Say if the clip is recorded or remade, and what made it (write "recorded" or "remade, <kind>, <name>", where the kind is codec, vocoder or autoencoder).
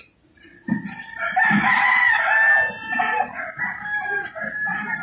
recorded